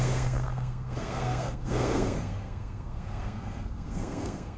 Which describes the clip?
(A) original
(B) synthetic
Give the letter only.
B